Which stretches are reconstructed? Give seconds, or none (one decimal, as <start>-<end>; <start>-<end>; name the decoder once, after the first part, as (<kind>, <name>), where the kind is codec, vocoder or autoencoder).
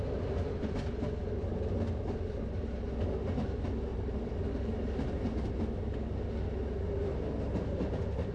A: 3.9-5.5 (vocoder, BigVGAN v2)